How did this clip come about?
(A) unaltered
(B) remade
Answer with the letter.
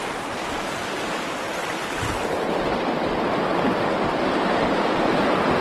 A